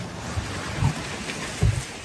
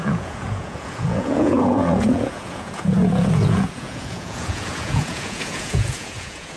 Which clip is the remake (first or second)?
second